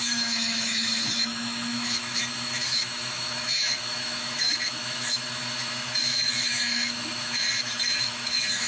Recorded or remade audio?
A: remade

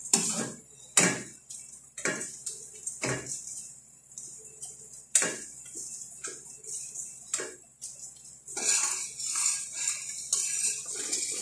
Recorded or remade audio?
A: recorded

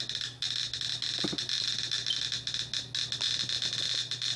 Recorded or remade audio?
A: recorded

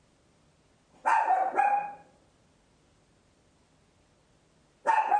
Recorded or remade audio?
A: recorded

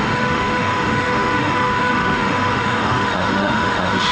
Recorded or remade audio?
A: remade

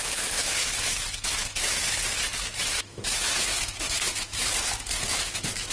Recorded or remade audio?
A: remade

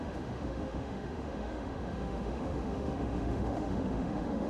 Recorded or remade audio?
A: remade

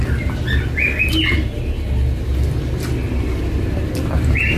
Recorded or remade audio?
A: recorded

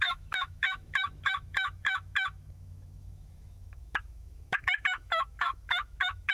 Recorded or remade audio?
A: remade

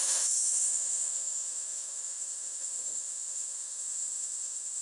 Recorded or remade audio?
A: remade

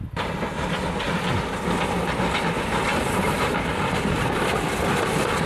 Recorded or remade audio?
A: recorded